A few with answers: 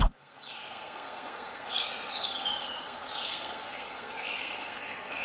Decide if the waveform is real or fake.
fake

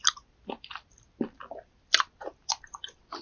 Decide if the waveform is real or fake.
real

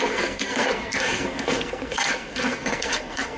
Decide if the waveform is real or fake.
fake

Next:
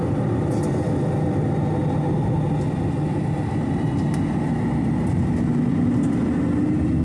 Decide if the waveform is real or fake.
real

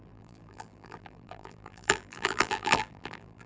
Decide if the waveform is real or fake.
fake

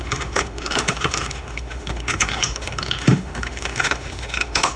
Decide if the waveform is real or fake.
fake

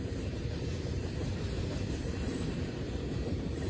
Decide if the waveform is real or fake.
fake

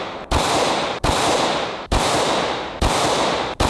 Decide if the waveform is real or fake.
real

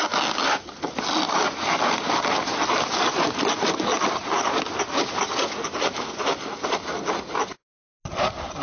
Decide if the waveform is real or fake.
real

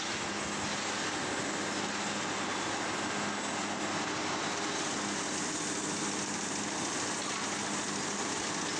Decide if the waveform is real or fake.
real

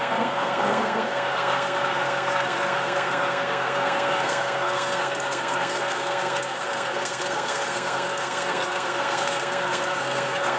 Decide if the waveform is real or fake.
fake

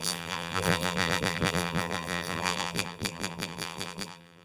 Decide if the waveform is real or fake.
fake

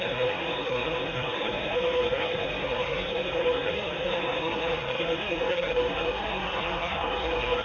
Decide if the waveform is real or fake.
fake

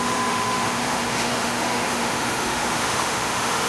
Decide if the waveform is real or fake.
fake